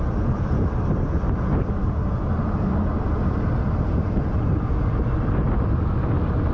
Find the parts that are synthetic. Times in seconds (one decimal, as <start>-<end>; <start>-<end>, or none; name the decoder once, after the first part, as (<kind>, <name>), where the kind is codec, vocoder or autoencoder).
none